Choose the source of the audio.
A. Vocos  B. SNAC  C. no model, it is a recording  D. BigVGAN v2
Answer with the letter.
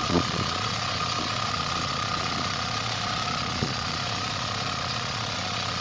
A